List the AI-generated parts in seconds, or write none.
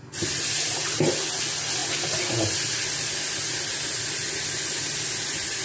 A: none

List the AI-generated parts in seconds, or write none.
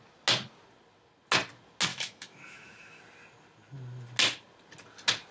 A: 1.9-3.0 (autoencoder, DAC-VAE)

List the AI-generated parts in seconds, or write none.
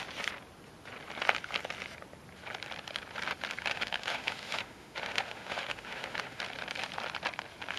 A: 3.7-6.4 (autoencoder, DAC-VAE)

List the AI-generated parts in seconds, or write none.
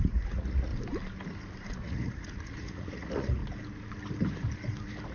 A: 0.0-0.7 (vocoder, Vocos); 1.7-3.4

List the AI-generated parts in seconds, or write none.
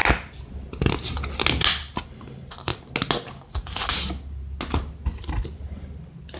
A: none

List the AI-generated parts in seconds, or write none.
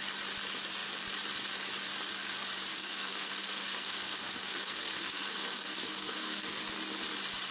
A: 2.7-6.6 (codec, SNAC)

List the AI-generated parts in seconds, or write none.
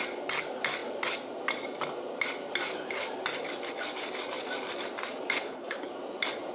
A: 5.4-5.9 (codec, HILCodec)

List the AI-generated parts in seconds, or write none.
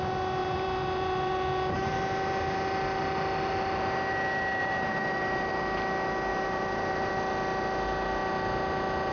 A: 0.4-1.3 (vocoder, BigVGAN v2); 4.6-5.5; 6.3-7.1